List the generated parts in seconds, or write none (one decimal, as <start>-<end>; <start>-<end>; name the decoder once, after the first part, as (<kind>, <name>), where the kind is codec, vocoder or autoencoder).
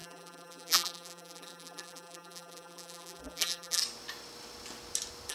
0.0-3.8 (vocoder, BigVGAN v2)